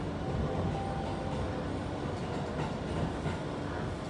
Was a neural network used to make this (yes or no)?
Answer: no